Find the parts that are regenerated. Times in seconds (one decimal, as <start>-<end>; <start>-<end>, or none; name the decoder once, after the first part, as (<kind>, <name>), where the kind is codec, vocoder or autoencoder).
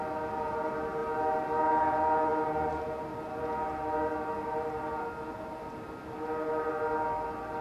none